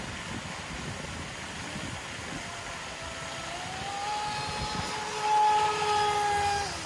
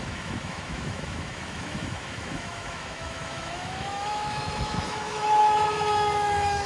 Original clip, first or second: first